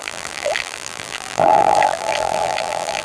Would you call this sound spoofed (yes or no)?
yes